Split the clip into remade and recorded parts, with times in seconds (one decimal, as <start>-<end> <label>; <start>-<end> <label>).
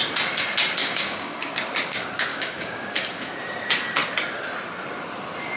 0.0-0.8 recorded; 0.8-1.5 remade; 1.5-2.3 recorded; 2.3-3.3 remade; 3.3-5.6 recorded